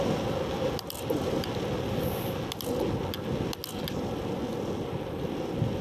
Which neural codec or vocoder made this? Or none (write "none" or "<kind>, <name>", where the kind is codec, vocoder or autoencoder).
none